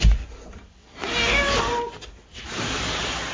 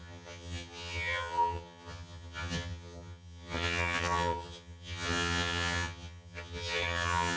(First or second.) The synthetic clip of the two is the second